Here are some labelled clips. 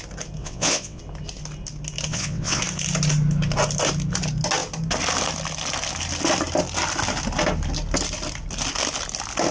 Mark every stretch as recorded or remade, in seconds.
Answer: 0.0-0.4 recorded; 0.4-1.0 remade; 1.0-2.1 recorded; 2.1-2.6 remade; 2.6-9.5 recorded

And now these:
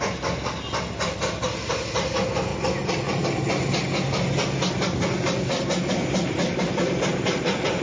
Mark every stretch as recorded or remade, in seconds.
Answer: 0.0-7.8 recorded

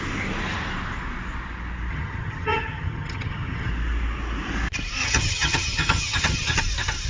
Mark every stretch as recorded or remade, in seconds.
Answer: 0.0-1.9 recorded; 1.9-3.7 remade; 3.7-5.0 recorded; 5.0-6.6 remade; 6.6-7.1 recorded

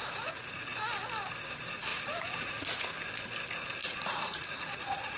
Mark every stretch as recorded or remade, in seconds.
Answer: 0.0-0.8 remade; 0.8-1.9 recorded; 1.9-3.0 remade; 3.0-3.8 recorded; 3.8-5.2 remade

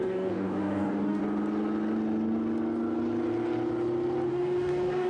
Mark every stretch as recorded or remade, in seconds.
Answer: 0.0-1.2 remade; 1.2-4.3 recorded; 4.3-5.1 remade

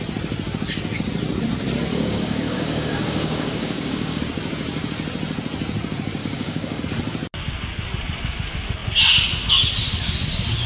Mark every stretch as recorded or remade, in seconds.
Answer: 0.0-1.9 recorded; 1.9-4.2 remade; 4.2-6.2 recorded; 6.2-6.8 remade; 6.8-10.7 recorded

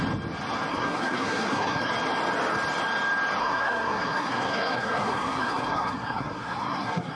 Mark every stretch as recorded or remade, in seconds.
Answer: 0.0-0.7 recorded; 0.7-1.9 remade; 1.9-3.4 recorded; 3.4-7.2 remade

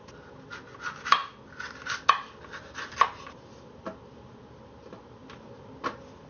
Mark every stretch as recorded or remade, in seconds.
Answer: 0.0-6.3 recorded